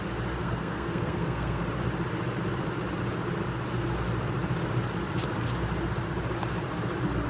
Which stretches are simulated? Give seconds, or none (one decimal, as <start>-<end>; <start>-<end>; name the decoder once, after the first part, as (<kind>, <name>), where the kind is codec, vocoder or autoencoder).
0.4-1.6 (codec, SNAC)